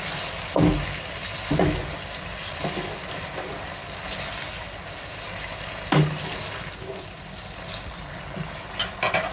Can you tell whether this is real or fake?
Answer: real